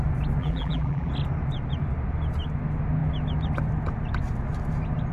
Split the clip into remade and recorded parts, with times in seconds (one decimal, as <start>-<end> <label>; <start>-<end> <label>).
0.0-0.4 recorded; 0.4-1.1 remade; 1.1-5.1 recorded